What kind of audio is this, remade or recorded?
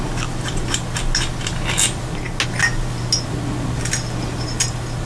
recorded